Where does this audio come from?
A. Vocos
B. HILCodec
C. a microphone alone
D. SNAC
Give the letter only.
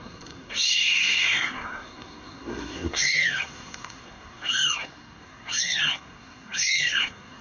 D